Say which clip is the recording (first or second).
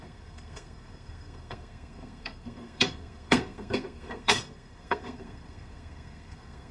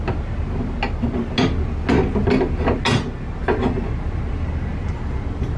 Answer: second